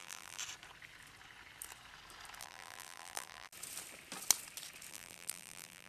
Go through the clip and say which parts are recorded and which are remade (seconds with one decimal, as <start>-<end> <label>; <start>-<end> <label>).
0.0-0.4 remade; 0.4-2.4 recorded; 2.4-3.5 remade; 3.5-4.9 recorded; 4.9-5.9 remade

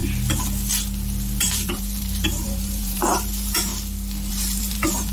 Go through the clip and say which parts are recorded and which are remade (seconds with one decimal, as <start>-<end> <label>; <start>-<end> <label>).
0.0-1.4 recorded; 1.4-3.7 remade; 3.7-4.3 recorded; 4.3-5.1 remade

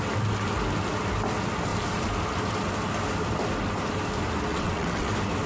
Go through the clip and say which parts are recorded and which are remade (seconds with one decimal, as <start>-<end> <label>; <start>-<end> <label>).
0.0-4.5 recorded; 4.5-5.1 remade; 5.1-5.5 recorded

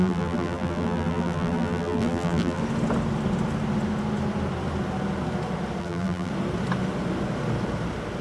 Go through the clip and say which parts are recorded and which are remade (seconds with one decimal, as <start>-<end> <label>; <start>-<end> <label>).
0.0-2.6 remade; 2.6-5.8 recorded; 5.8-6.3 remade; 6.3-8.2 recorded

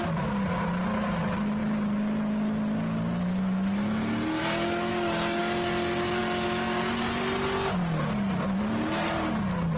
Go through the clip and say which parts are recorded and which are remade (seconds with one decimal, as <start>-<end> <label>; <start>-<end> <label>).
0.0-9.8 recorded

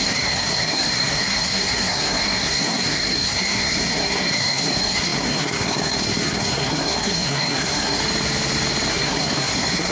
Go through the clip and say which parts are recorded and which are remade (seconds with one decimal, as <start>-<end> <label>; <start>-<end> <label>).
0.0-8.0 remade; 8.0-8.9 recorded; 8.9-9.9 remade